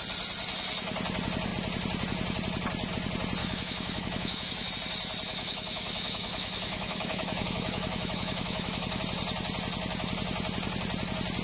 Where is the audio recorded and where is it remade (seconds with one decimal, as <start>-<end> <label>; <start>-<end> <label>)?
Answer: 0.0-3.4 recorded; 3.4-4.7 remade; 4.7-5.3 recorded; 5.3-9.0 remade; 9.0-11.4 recorded